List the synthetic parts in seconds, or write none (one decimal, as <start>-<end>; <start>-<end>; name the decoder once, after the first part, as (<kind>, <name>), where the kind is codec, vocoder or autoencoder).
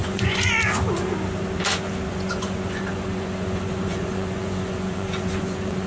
0.0-0.5 (vocoder, Vocos); 2.1-5.9